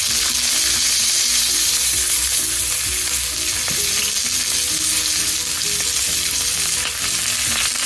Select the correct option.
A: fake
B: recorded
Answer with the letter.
B